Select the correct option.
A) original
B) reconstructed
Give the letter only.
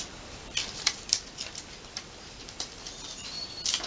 B